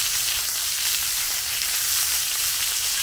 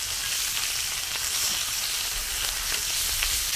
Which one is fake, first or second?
first